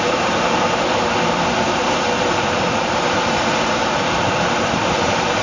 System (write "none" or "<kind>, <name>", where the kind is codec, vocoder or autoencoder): vocoder, BigVGAN v2